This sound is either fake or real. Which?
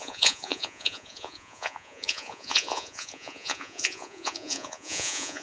fake